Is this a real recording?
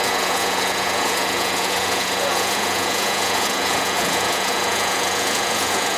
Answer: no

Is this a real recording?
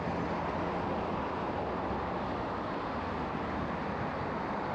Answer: yes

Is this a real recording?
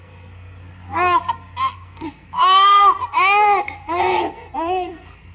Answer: no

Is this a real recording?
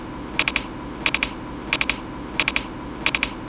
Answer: yes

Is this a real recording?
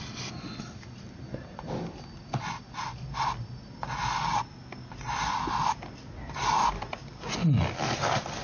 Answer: yes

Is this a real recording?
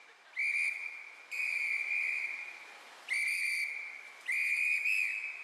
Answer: yes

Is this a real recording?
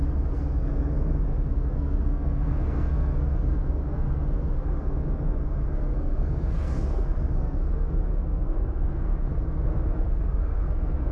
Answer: no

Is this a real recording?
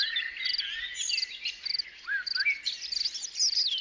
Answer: yes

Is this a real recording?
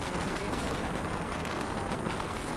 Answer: no